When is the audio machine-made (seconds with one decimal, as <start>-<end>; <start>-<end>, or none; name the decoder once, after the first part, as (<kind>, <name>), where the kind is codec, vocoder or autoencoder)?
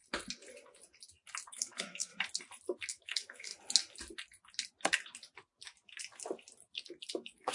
1.5-2.1 (autoencoder, DAC-VAE); 2.9-3.5; 7.1-7.5